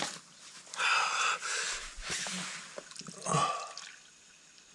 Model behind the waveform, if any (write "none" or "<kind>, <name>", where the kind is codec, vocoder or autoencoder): none